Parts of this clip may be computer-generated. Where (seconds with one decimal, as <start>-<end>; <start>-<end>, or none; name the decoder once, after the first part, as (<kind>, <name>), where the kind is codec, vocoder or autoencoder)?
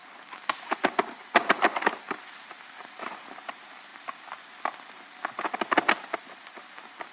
0.0-3.4 (vocoder, BigVGAN v2)